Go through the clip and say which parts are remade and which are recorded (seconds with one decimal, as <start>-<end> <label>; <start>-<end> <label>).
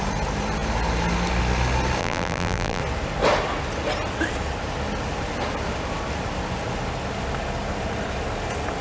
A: 0.0-2.0 recorded; 2.0-2.8 remade; 2.8-8.8 recorded